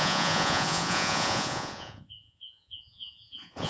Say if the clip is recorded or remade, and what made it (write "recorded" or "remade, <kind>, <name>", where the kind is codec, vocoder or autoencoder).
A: remade, vocoder, Vocos